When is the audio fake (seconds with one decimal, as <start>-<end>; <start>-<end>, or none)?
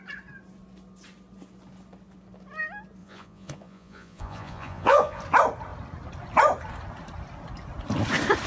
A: 3.0-5.2